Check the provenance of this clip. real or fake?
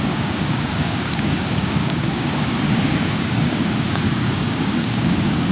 fake